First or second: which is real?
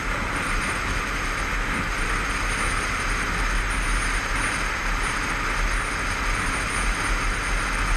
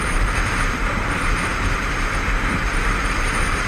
first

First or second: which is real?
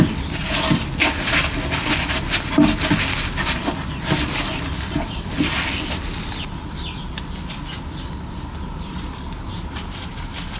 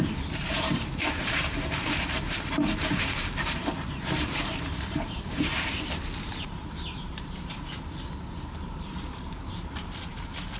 first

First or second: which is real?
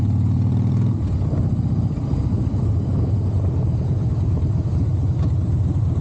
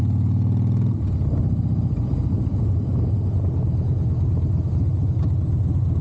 second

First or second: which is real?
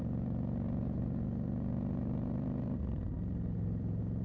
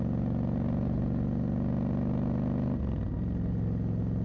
second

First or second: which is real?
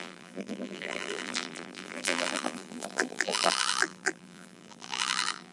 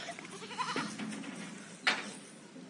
second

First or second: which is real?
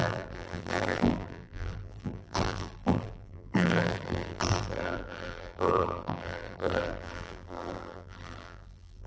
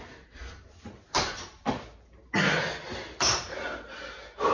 second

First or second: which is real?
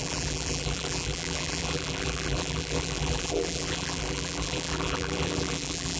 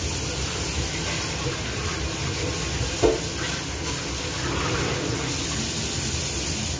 second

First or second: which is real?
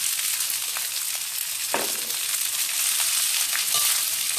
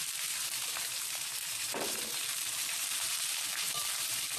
first